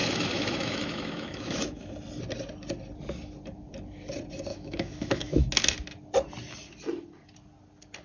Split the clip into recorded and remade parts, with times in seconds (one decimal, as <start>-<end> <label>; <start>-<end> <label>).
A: 0.0-1.9 remade; 1.9-4.5 recorded; 4.5-5.5 remade; 5.5-8.0 recorded

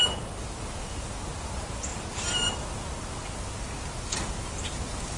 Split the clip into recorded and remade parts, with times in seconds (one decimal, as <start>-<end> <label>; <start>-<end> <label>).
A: 0.0-5.2 recorded

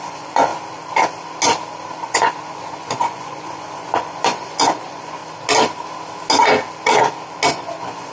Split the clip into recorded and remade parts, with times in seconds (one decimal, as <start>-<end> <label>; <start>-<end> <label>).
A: 0.0-0.5 remade; 0.5-2.0 recorded; 2.0-5.2 remade; 5.2-7.5 recorded; 7.5-8.1 remade

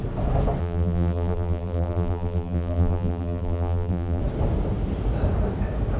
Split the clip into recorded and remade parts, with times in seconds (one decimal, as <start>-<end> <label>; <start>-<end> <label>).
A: 0.0-0.6 recorded; 0.6-4.2 remade; 4.2-6.0 recorded

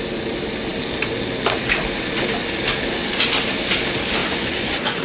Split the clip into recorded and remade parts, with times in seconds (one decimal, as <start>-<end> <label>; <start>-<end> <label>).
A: 0.0-4.2 recorded; 4.2-5.0 remade

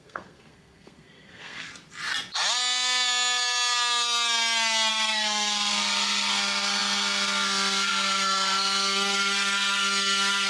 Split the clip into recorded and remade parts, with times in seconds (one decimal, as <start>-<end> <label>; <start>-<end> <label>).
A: 0.0-1.7 remade; 1.7-4.9 recorded; 4.9-10.5 remade